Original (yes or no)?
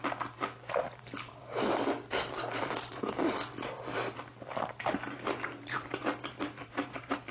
no